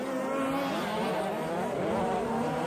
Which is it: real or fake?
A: real